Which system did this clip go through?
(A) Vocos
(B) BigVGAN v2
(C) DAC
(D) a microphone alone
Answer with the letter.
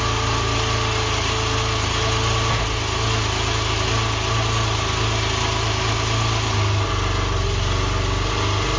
D